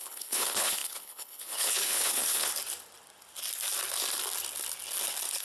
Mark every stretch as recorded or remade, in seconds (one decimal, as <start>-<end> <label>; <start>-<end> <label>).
0.0-2.5 remade; 2.5-5.4 recorded